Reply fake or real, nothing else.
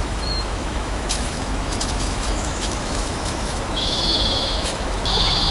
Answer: fake